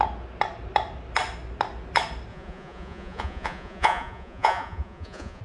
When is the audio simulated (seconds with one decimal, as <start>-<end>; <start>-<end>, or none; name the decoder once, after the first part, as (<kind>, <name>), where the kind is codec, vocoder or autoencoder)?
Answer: 2.3-5.4 (vocoder, Vocos)

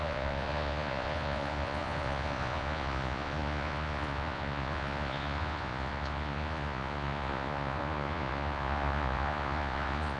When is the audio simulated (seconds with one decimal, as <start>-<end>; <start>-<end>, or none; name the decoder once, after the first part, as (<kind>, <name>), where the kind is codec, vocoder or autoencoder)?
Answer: 0.0-10.2 (vocoder, Vocos)

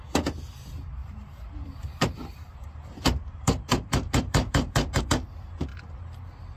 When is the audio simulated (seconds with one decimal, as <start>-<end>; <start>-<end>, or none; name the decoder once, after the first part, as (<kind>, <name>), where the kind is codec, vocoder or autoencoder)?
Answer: 1.0-5.0 (vocoder, BigVGAN v2)

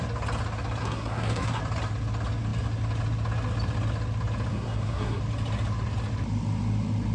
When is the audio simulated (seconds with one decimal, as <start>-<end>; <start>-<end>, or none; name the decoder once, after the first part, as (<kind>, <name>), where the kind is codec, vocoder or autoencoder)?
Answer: 0.8-1.6 (codec, SNAC); 4.5-5.2

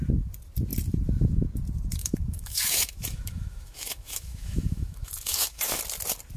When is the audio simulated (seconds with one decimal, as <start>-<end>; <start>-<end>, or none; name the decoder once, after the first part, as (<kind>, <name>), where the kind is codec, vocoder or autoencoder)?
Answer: 2.0-5.8 (autoencoder, DAC-VAE)

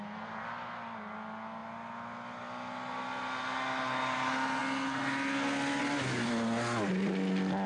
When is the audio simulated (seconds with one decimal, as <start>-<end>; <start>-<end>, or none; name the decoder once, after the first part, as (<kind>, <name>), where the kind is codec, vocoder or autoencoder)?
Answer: none